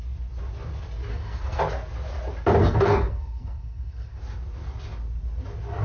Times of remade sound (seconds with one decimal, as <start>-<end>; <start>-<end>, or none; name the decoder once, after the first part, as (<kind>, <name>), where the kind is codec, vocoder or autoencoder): 1.1-1.6 (codec, SNAC); 2.6-4.2